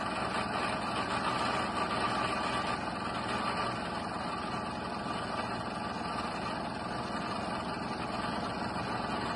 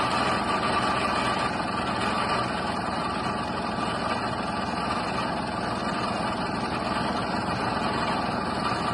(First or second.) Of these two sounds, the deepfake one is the second